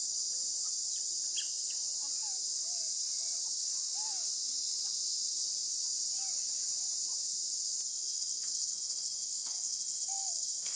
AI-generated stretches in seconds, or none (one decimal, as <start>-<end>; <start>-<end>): 7.9-10.8